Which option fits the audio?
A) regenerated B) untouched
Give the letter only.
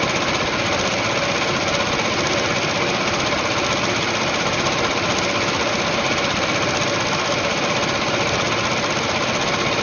B